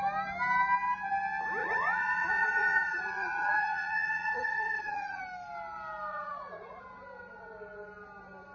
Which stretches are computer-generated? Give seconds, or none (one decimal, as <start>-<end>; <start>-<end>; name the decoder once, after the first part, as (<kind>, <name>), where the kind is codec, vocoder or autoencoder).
1.6-5.2 (vocoder, Vocos); 6.1-6.8